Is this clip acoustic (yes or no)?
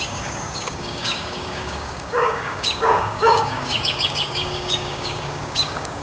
no